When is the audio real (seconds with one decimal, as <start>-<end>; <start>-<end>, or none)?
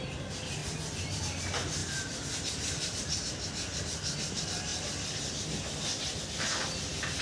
0.0-7.2